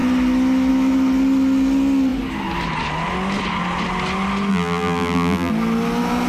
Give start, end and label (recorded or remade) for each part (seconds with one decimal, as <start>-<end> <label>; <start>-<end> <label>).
0.0-4.5 recorded; 4.5-5.5 remade; 5.5-6.3 recorded